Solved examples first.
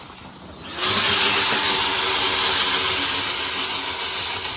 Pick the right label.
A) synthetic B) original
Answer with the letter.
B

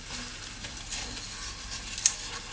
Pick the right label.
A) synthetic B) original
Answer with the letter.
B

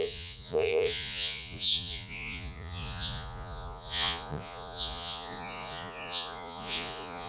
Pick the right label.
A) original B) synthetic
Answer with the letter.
B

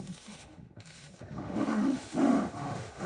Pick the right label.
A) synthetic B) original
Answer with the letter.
A